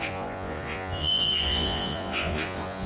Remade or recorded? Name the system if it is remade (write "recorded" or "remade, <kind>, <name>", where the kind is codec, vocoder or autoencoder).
remade, vocoder, Vocos